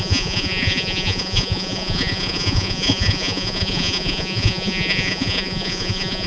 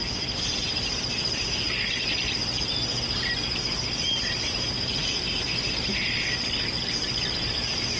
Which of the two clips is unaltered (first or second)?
second